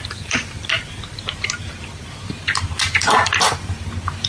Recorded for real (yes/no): no